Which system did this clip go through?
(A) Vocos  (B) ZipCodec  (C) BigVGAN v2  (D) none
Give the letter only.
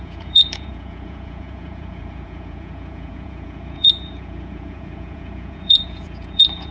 A